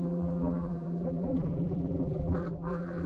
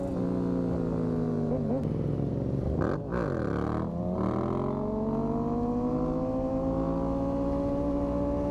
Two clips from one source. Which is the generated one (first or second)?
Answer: first